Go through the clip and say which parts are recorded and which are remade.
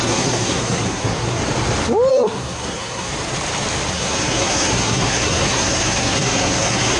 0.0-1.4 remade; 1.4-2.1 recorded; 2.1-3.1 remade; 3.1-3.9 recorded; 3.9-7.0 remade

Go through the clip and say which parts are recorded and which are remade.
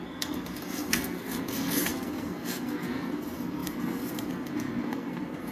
0.0-5.5 remade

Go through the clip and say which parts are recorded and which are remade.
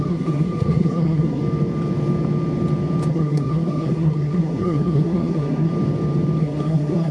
0.0-1.4 remade; 1.4-3.1 recorded; 3.1-5.7 remade; 5.7-6.4 recorded; 6.4-7.1 remade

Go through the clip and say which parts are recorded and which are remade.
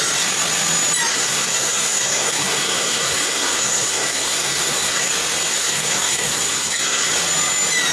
0.0-1.1 recorded; 1.1-5.1 remade; 5.1-5.5 recorded; 5.5-7.1 remade; 7.1-7.9 recorded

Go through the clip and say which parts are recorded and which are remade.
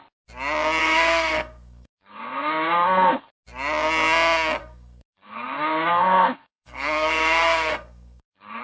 0.0-0.8 recorded; 0.8-3.3 remade; 3.3-4.6 recorded; 4.6-8.6 remade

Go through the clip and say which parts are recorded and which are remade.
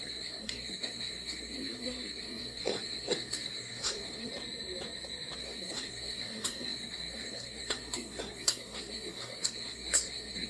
0.0-4.3 remade; 4.3-5.4 recorded; 5.4-10.5 remade